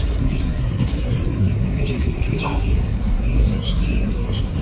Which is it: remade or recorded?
remade